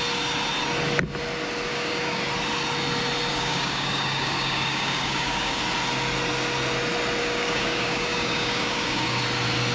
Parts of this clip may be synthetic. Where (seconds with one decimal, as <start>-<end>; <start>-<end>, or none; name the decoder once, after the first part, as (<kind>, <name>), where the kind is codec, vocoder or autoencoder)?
1.7-2.2 (codec, DAC); 3.3-5.6; 7.2-9.2